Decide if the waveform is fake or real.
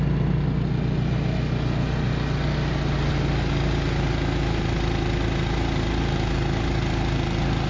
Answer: real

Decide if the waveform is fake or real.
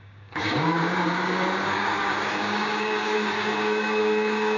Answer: fake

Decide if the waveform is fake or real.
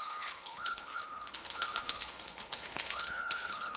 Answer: fake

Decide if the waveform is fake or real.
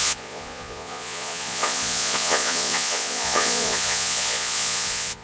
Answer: fake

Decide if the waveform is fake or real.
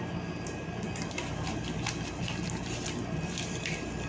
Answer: real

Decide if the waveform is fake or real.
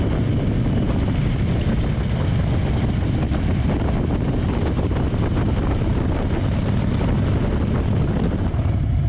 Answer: real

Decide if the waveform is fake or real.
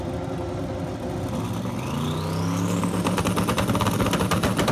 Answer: real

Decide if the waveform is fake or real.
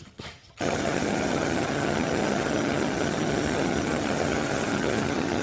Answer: fake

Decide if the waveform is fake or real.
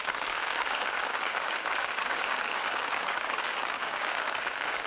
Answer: fake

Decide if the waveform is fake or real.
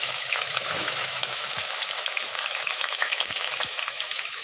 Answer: fake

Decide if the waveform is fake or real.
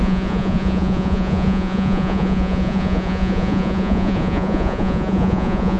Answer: fake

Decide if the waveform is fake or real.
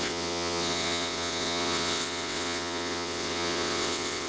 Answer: fake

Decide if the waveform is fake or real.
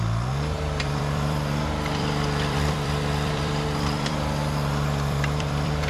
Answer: fake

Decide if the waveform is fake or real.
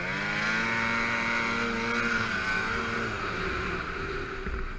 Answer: real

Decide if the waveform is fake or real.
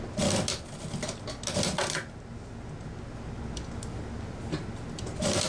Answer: real